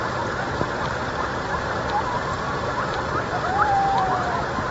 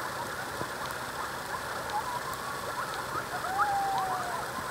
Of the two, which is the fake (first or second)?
first